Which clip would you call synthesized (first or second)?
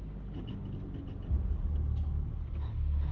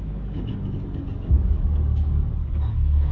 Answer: second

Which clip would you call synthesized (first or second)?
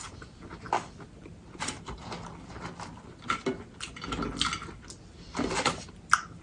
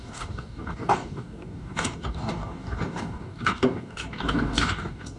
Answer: second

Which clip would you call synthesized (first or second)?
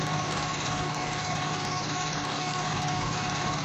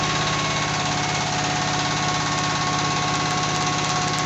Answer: first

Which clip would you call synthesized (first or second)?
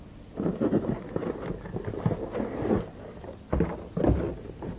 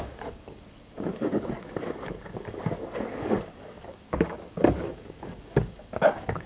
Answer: second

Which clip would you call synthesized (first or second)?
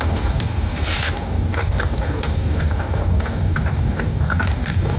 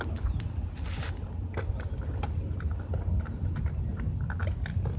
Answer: first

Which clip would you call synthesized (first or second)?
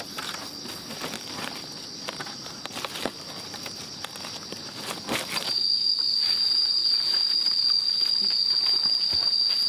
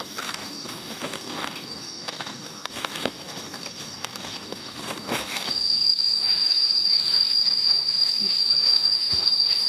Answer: second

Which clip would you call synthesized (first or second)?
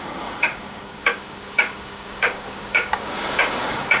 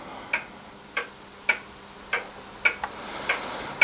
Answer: first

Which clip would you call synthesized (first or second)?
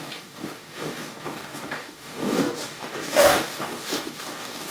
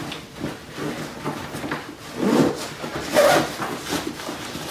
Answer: first